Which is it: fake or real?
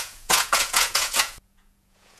fake